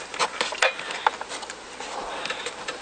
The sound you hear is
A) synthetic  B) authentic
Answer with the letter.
B